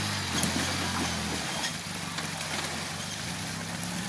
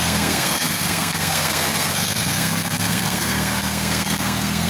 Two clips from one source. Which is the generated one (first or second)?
second